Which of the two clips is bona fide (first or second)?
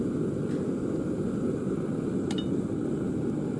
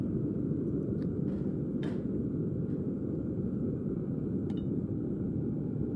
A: first